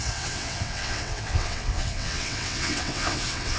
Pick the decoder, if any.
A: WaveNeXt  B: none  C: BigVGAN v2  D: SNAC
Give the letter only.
A